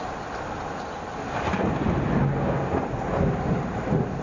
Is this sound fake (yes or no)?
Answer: no